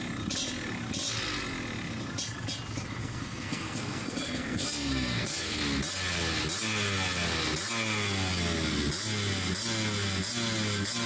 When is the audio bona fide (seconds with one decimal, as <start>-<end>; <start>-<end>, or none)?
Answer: 0.0-3.0; 5.6-11.1